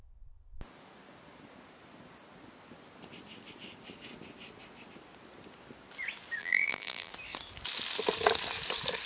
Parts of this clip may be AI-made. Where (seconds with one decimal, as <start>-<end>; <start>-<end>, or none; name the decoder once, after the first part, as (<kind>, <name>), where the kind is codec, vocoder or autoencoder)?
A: 6.4-7.1 (vocoder, BigVGAN v2)